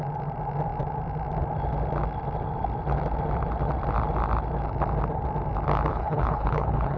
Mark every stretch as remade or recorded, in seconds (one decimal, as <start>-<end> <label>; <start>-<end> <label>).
0.0-5.9 recorded; 5.9-7.0 remade